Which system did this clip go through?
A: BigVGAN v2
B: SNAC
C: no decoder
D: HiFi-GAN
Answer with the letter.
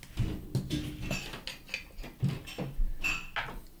C